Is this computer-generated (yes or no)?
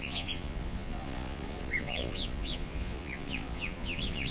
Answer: yes